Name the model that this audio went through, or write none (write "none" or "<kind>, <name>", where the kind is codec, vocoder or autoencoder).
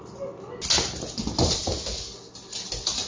none